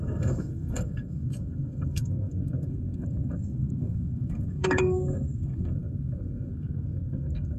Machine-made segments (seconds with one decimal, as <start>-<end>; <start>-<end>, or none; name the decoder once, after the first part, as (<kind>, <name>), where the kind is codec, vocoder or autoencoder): 0.0-7.6 (codec, SNAC)